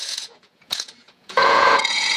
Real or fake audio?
fake